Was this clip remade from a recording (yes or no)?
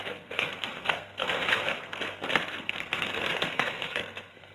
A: yes